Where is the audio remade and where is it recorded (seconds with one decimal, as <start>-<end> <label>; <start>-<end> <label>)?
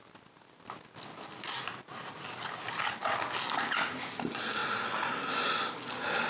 0.0-6.3 recorded